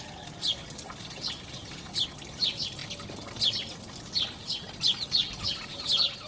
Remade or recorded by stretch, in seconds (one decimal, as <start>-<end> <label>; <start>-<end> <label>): 0.0-6.3 recorded